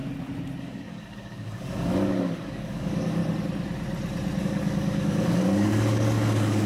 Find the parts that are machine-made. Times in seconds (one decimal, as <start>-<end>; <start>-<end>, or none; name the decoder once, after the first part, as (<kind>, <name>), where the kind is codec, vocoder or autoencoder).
0.6-3.2 (codec, DAC); 4.4-6.7